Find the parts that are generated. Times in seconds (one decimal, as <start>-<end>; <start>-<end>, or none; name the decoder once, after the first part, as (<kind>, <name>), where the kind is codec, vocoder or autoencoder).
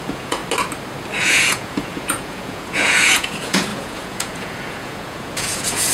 0.0-0.4 (vocoder, Vocos); 1.2-5.9